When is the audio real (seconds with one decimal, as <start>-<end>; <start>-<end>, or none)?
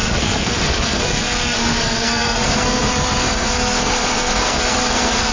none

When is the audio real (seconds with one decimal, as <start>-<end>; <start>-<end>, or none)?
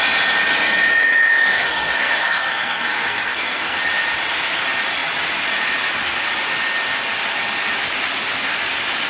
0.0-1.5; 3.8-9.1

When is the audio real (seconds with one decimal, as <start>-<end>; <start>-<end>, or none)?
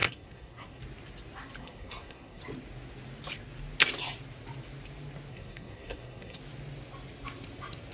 0.8-1.6; 2.4-5.3; 6.4-7.9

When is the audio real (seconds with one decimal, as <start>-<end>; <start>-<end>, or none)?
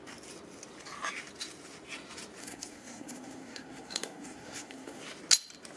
0.0-2.4; 5.0-5.8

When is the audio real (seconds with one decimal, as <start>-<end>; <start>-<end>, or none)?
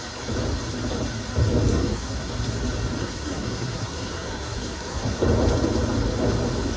0.0-1.7; 2.3-3.0; 5.3-6.8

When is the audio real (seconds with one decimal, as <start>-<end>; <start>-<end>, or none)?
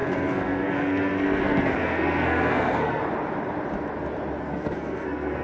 3.0-4.4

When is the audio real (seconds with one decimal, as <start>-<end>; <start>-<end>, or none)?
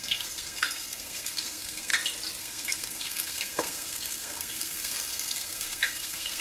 1.9-2.4